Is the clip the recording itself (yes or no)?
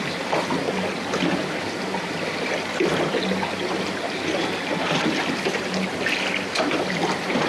yes